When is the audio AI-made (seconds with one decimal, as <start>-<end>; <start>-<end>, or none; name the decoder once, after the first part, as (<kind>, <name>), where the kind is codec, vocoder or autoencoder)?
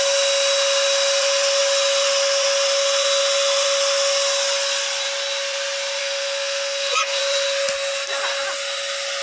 6.0-7.2 (codec, SNAC)